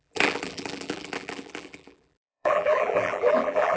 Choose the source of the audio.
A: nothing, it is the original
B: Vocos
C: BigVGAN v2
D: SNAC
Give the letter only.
C